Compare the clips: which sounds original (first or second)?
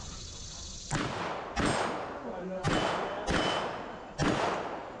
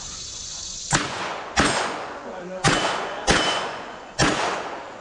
first